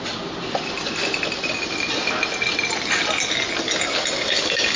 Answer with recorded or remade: recorded